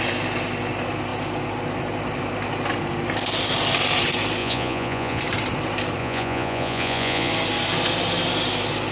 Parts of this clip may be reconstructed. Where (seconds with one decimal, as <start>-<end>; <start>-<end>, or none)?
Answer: 4.4-5.2; 6.0-7.3